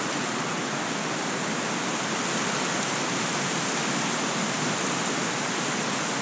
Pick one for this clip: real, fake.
real